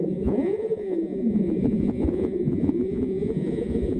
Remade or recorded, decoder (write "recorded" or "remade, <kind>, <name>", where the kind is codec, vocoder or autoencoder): remade, vocoder, Vocos